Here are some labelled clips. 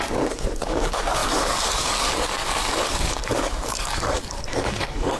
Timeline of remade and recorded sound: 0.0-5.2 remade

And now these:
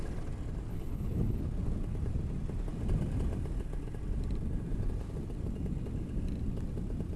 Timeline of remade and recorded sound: 0.0-0.7 recorded; 0.7-1.4 remade; 1.4-7.2 recorded

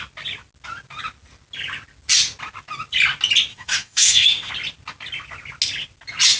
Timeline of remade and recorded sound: 0.0-3.5 recorded; 3.5-4.5 remade; 4.5-6.4 recorded